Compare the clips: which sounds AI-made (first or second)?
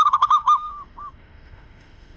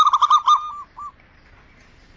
first